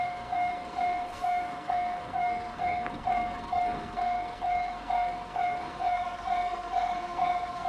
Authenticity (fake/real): fake